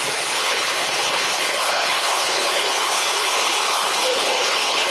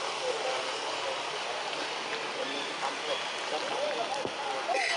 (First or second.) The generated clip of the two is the first